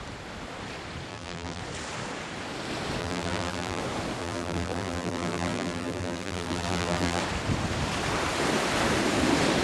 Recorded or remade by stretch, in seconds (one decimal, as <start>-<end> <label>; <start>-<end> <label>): 0.0-1.1 recorded; 1.1-1.6 remade; 1.6-3.0 recorded; 3.0-3.8 remade; 3.8-4.2 recorded; 4.2-7.2 remade; 7.2-9.6 recorded